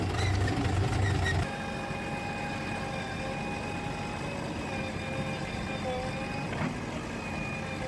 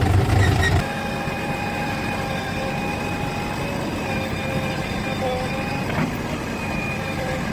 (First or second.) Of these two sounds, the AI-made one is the second